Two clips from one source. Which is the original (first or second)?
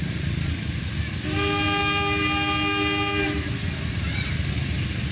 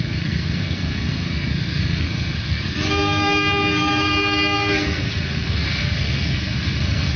first